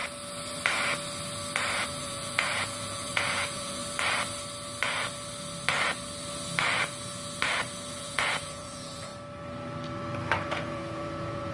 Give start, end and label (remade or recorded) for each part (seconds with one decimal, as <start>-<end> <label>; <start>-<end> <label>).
0.0-2.0 recorded; 2.0-3.8 remade; 3.8-7.9 recorded; 7.9-9.1 remade; 9.1-10.4 recorded; 10.4-11.5 remade